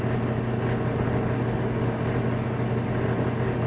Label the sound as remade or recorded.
recorded